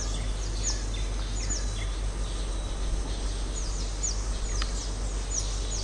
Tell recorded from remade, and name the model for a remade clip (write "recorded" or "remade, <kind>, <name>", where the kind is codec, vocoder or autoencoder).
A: recorded